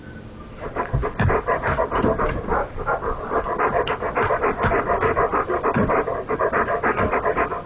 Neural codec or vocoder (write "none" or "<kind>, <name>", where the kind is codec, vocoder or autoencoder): none